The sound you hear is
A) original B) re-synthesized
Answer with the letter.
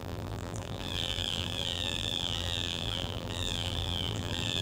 B